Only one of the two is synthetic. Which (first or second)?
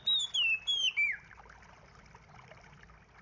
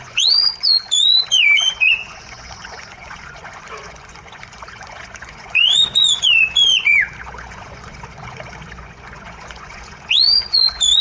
second